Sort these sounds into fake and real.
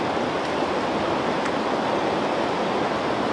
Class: real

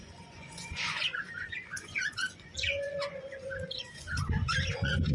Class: fake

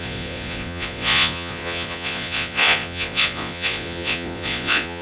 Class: fake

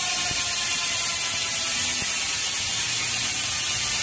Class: real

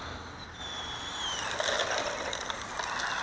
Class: real